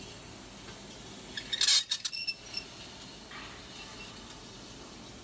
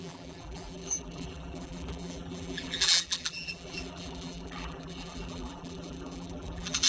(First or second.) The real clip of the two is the first